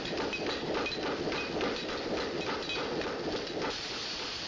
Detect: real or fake real